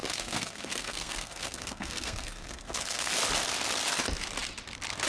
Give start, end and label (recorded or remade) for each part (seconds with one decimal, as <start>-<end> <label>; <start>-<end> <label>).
0.0-3.1 remade; 3.1-5.1 recorded